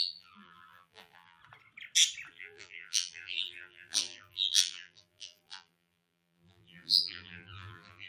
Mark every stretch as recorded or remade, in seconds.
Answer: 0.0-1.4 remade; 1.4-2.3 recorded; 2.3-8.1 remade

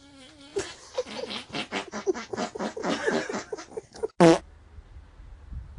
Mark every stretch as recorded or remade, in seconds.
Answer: 0.0-2.8 recorded; 2.8-4.1 remade; 4.1-5.8 recorded